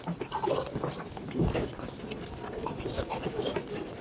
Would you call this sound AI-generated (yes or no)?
no